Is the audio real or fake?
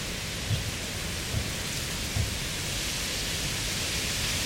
real